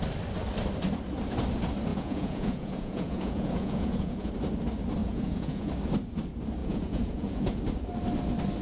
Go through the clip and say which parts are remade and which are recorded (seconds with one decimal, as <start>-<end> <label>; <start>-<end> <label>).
0.0-1.9 recorded; 1.9-4.3 remade; 4.3-5.0 recorded; 5.0-5.7 remade; 5.7-6.6 recorded; 6.6-7.6 remade; 7.6-8.6 recorded